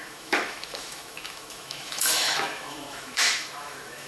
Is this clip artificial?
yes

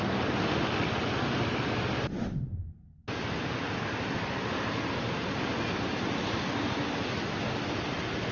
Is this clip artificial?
no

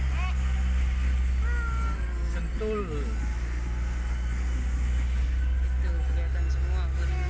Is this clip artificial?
no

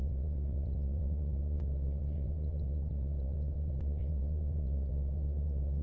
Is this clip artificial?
yes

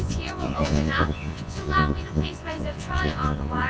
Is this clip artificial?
yes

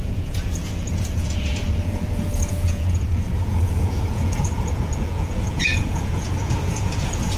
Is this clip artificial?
yes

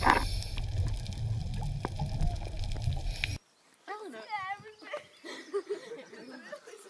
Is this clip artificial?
no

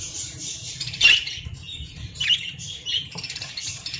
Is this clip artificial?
yes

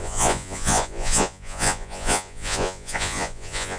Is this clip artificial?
yes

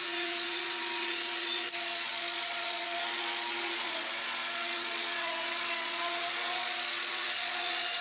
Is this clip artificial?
yes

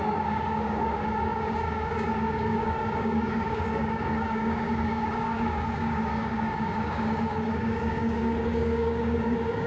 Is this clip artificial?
yes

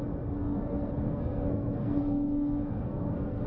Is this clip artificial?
yes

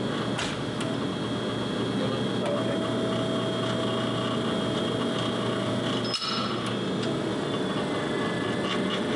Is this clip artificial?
no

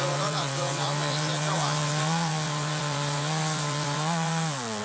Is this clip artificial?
yes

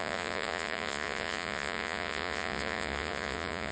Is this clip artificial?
yes